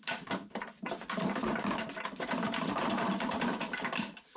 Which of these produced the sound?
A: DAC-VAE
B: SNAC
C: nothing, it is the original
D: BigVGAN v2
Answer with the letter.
D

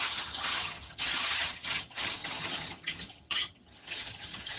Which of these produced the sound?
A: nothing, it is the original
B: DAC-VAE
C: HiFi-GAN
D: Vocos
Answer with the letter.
C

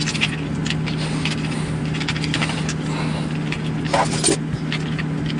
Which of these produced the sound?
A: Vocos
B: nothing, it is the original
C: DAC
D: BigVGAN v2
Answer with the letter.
B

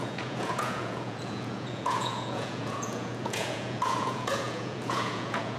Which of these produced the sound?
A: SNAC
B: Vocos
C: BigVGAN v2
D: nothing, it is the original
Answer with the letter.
B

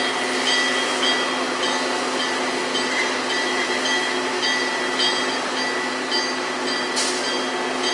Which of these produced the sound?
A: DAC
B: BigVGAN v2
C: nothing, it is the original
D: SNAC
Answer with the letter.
C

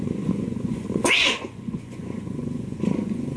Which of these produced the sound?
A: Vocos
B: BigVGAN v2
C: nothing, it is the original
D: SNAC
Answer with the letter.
A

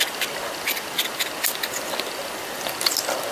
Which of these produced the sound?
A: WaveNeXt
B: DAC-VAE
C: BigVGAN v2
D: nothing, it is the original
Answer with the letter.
D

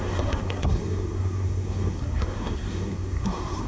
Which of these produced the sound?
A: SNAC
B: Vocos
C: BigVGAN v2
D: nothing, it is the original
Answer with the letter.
A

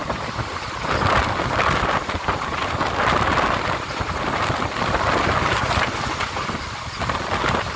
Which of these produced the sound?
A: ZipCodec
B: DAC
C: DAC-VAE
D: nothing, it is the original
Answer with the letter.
D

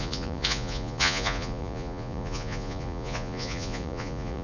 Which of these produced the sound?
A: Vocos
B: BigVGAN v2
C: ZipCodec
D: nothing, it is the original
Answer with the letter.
A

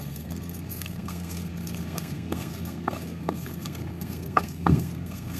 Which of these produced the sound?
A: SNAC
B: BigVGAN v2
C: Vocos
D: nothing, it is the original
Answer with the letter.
A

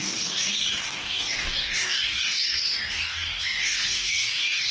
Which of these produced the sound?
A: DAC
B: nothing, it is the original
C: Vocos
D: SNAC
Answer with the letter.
A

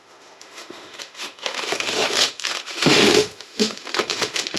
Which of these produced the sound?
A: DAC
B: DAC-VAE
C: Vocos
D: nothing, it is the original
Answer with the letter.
B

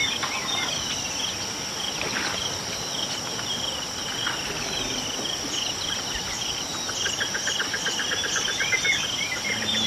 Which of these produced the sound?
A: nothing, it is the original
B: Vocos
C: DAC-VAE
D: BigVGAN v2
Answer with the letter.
A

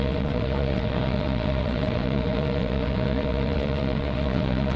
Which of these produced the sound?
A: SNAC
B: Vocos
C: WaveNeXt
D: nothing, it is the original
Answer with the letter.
C